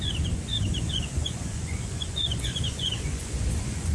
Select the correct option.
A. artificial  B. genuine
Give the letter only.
A